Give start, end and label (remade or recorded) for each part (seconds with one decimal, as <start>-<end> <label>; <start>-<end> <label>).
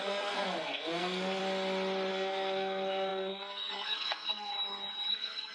0.0-1.4 remade; 1.4-2.1 recorded; 2.1-4.5 remade; 4.5-5.1 recorded; 5.1-5.5 remade